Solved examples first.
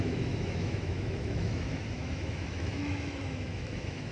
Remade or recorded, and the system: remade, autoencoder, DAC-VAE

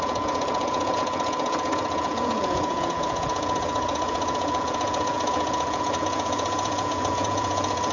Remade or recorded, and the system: remade, vocoder, Vocos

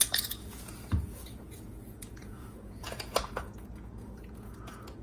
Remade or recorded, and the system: remade, vocoder, Vocos